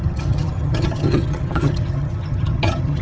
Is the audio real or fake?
fake